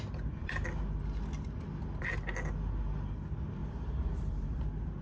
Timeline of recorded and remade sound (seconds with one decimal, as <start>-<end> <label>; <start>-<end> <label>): 0.0-3.6 recorded; 3.6-4.6 remade; 4.6-5.0 recorded

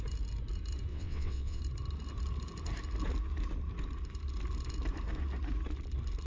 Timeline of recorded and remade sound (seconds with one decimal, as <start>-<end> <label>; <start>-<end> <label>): 0.0-0.9 recorded; 0.9-1.6 remade; 1.6-6.3 recorded